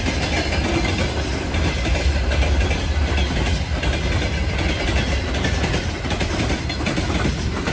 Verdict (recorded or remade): recorded